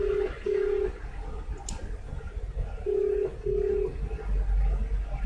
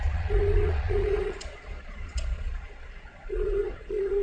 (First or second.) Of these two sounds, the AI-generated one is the second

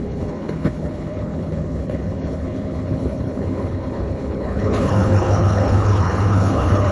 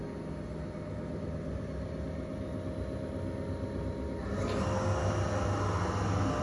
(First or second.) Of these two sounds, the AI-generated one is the first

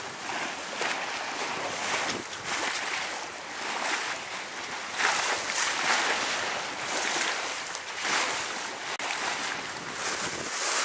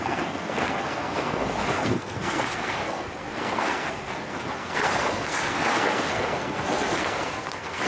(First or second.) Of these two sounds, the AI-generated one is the second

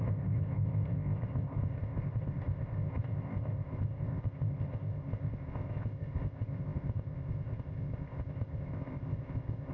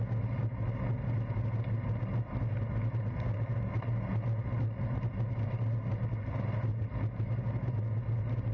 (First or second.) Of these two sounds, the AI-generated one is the first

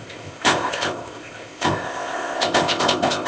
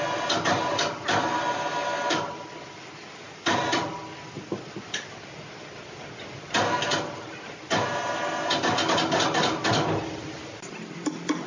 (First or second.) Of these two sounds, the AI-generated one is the first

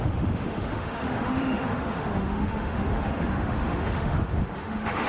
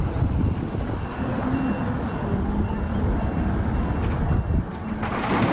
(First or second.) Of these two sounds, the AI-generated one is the first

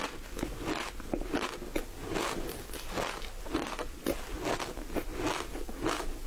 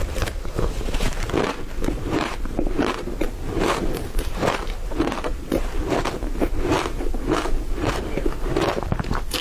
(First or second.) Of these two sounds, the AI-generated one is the second